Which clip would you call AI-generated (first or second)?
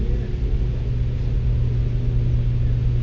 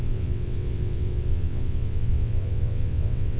second